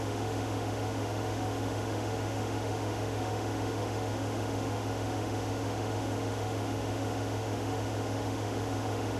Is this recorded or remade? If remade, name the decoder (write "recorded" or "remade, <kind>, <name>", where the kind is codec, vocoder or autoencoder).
remade, autoencoder, DAC-VAE